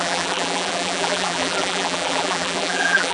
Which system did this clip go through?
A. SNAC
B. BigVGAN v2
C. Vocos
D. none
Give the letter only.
B